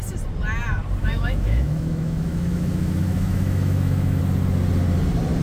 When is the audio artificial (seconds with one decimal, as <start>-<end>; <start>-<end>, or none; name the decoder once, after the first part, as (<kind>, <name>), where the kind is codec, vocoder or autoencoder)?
1.0-4.2 (autoencoder, DAC-VAE)